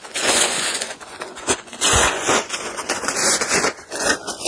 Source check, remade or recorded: remade